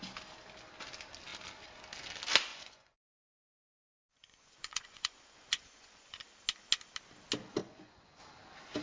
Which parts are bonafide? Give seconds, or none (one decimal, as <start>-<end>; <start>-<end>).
0.0-2.5; 6.2-7.6; 8.2-8.8